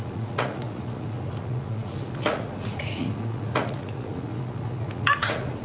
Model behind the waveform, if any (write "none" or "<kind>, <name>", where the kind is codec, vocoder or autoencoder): vocoder, Vocos